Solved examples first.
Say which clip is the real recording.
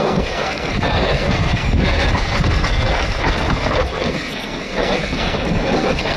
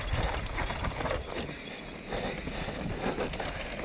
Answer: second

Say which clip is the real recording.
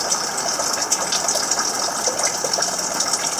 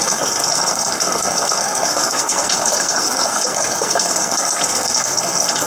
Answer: first